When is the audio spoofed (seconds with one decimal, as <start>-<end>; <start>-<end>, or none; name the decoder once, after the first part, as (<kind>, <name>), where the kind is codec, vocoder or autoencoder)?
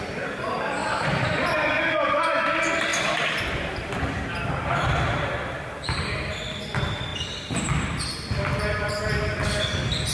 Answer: 0.8-2.2 (vocoder, BigVGAN v2)